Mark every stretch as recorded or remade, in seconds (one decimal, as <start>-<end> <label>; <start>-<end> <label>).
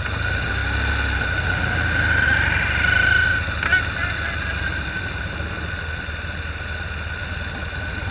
0.0-8.1 recorded